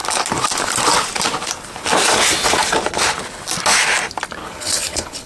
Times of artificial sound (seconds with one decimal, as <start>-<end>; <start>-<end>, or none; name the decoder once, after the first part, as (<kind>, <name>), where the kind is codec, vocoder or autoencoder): 4.4-5.3 (codec, HILCodec)